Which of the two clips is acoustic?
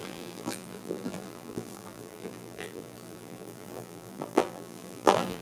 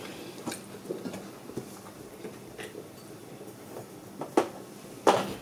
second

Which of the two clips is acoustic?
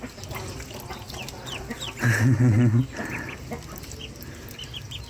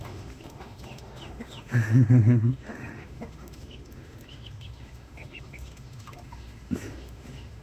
first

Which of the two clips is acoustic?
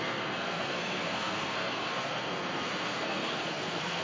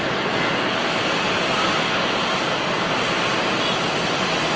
second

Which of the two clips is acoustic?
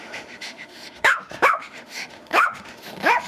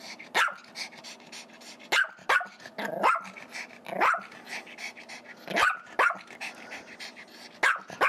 second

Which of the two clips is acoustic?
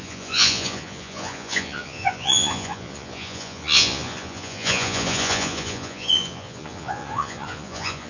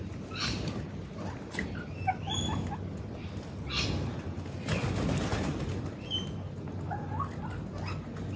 second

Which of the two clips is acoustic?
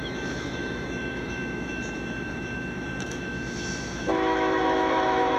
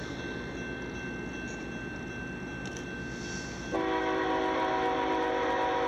second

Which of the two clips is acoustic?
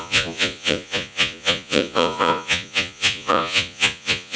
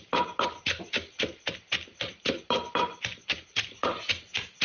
second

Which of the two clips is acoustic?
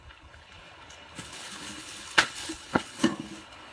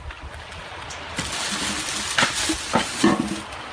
second